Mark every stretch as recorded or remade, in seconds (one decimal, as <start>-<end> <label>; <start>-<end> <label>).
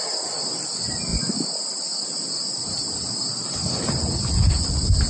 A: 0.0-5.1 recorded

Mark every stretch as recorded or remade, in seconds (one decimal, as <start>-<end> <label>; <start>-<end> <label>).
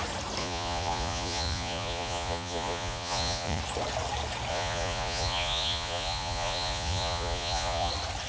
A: 0.0-0.4 recorded; 0.4-3.6 remade; 3.6-4.5 recorded; 4.5-7.9 remade; 7.9-8.3 recorded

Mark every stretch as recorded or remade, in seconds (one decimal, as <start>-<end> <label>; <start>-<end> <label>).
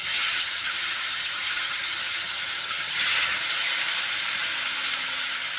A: 0.0-3.4 remade; 3.4-5.6 recorded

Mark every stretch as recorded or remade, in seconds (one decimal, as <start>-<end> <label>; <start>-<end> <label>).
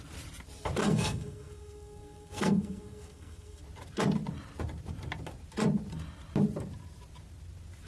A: 0.0-0.8 recorded; 0.8-3.6 remade; 3.6-7.9 recorded